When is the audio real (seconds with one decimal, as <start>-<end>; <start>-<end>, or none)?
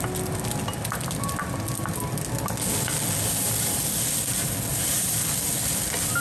0.0-3.2; 3.8-4.7; 5.2-6.2